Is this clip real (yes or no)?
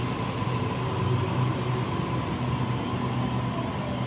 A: yes